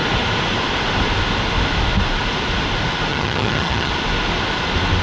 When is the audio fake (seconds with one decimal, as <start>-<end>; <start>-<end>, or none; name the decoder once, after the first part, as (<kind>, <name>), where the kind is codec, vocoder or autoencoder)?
3.1-3.9 (vocoder, HiFi-GAN)

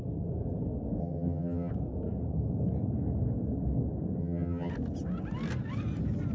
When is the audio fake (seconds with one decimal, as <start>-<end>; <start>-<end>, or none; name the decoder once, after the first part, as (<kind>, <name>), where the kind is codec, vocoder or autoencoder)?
1.0-1.7 (vocoder, HiFi-GAN); 4.2-4.7

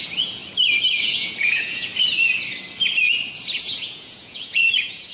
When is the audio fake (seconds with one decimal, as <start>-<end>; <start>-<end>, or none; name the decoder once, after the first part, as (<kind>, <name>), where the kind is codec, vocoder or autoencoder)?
0.0-0.4 (vocoder, Vocos); 1.0-1.9; 3.6-5.1

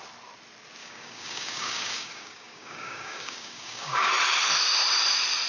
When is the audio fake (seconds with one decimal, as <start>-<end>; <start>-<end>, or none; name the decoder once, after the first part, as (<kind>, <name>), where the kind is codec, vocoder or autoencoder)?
0.8-4.1 (codec, DAC)